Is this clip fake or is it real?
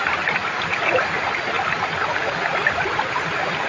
real